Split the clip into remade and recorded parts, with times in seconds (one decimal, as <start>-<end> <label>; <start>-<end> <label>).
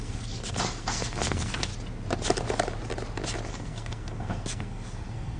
0.0-1.7 remade; 1.7-3.5 recorded; 3.5-5.4 remade